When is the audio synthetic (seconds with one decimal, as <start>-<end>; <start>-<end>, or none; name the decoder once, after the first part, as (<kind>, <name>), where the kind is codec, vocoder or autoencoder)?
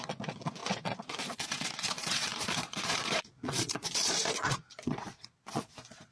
0.0-6.1 (vocoder, Vocos)